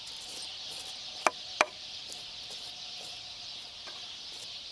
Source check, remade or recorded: recorded